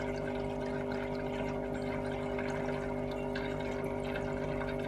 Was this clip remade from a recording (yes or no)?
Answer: no